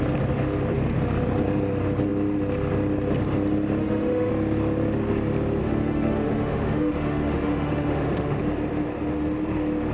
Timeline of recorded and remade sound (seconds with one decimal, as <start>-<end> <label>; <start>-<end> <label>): 0.0-3.8 recorded; 3.8-4.3 remade; 4.3-5.6 recorded; 5.6-8.4 remade; 8.4-9.9 recorded